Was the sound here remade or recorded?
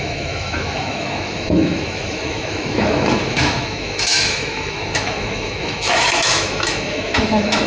remade